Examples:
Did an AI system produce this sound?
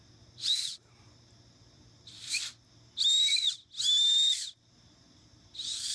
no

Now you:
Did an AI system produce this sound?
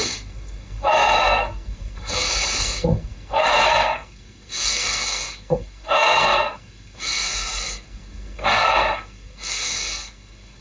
yes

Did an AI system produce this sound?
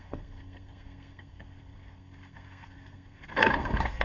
yes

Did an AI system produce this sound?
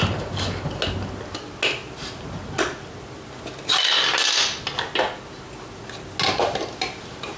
no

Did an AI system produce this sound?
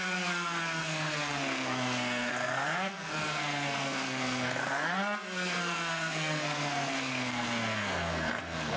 yes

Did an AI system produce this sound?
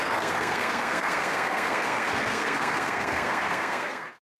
yes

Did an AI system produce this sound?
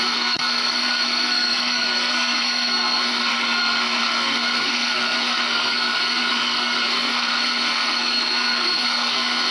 yes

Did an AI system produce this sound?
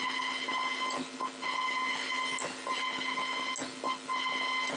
no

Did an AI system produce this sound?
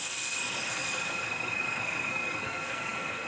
yes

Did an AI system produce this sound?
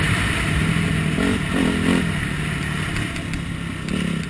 no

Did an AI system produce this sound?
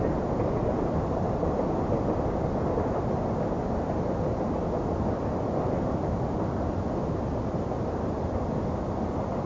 no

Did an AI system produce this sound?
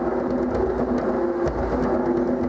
no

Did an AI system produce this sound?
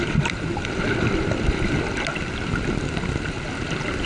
no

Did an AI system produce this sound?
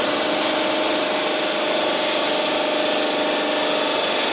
no